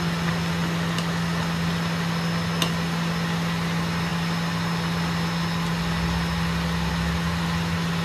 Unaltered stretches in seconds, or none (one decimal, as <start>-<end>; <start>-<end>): 0.0-8.0